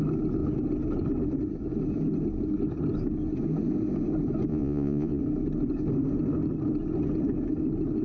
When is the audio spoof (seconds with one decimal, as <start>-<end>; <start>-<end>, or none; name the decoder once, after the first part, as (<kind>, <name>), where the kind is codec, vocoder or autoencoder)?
4.5-5.2 (vocoder, Vocos)